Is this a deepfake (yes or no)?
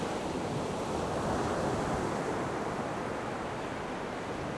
no